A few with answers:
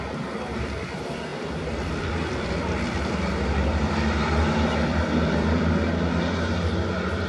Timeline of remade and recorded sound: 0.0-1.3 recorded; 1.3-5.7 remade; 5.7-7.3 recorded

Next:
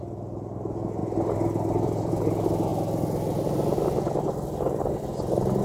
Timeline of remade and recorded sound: 0.0-1.0 recorded; 1.0-2.1 remade; 2.1-5.6 recorded

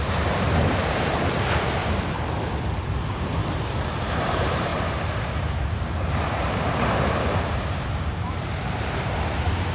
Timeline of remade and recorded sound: 0.0-1.8 remade; 1.8-2.7 recorded; 2.7-3.4 remade; 3.4-4.0 recorded; 4.0-9.7 remade

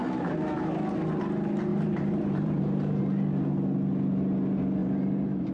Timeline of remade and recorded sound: 0.0-1.7 recorded; 1.7-3.0 remade; 3.0-4.8 recorded; 4.8-5.5 remade